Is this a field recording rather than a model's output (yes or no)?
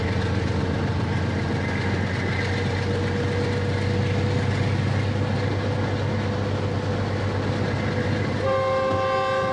yes